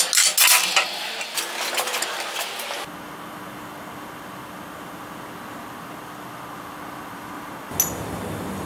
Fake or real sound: real